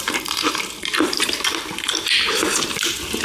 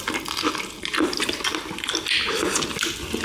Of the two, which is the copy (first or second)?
first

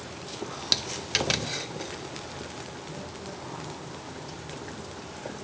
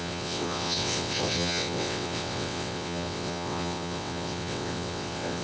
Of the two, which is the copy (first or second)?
second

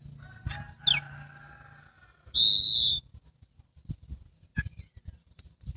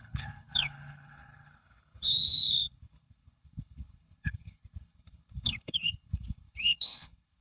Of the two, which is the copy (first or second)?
second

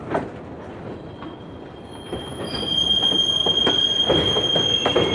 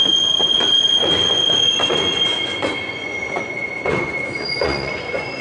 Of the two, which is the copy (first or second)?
second